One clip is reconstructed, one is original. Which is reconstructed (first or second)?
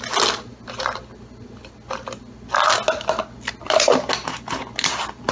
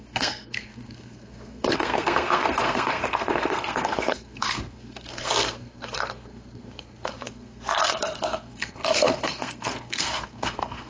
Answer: second